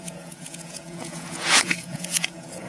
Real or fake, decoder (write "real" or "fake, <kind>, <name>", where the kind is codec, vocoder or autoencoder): fake, vocoder, Vocos